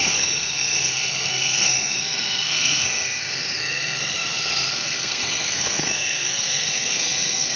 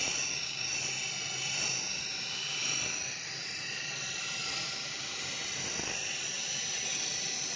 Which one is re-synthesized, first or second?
first